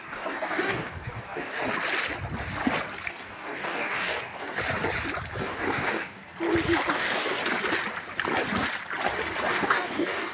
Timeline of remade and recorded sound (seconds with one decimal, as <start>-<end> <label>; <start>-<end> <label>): 0.0-1.7 remade; 1.7-3.1 recorded; 3.1-4.6 remade; 4.6-5.4 recorded; 5.4-6.2 remade; 6.2-6.9 recorded; 6.9-7.4 remade; 7.4-9.5 recorded; 9.5-10.3 remade